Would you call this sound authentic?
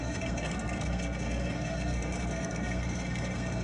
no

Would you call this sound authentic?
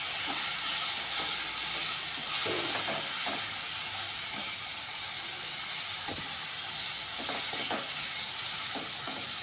yes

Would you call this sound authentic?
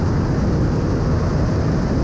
yes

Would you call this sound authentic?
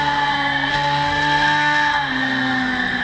no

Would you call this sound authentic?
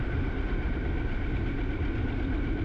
yes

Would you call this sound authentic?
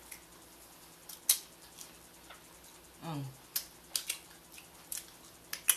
yes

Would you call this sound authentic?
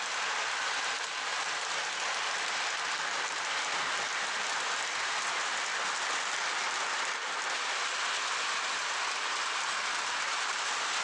yes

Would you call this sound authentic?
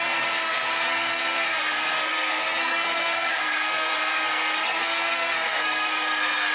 no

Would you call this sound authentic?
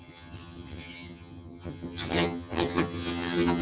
no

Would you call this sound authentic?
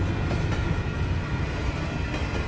yes